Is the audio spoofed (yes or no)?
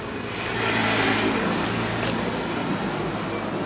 no